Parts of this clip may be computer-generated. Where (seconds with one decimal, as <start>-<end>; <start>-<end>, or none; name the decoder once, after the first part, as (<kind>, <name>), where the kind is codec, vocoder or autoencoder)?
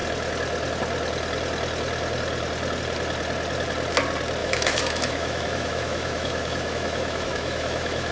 4.4-8.1 (autoencoder, DAC-VAE)